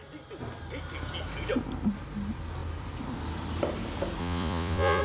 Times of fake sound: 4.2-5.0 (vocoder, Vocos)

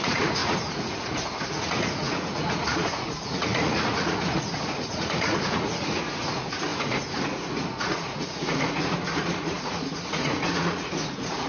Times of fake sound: 0.0-11.5 (vocoder, Vocos)

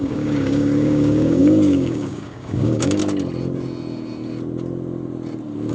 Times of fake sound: 0.0-3.0 (codec, DAC)

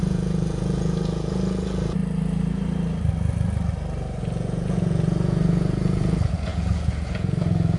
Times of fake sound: 0.0-2.0 (vocoder, Vocos); 4.2-7.8